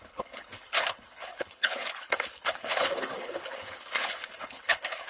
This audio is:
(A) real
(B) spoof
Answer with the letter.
B